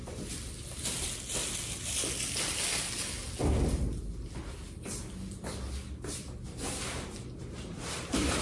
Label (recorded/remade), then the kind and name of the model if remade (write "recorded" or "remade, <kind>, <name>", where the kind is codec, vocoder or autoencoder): recorded